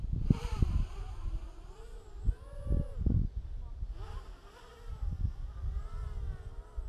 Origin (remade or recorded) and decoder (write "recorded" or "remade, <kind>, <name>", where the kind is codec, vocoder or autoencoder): recorded